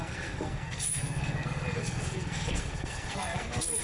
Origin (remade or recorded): remade